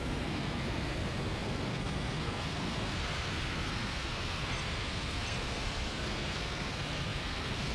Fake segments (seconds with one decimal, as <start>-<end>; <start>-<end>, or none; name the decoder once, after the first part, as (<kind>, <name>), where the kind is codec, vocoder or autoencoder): 0.0-7.7 (codec, SNAC)